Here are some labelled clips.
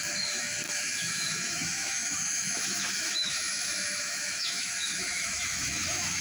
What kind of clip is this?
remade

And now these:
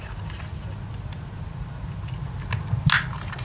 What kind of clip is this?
recorded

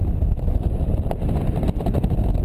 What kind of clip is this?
remade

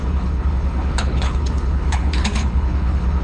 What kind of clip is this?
remade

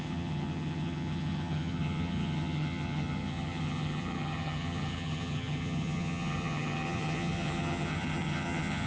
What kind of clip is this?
remade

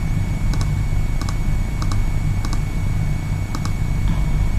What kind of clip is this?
recorded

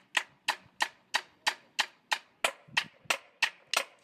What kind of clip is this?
recorded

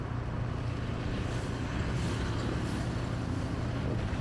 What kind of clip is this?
recorded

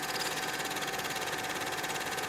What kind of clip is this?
remade